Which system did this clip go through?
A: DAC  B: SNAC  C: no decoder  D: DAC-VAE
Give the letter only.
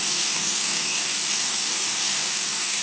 A